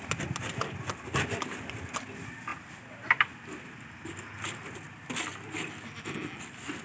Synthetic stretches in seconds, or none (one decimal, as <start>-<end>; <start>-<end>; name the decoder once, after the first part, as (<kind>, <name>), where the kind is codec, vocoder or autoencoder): none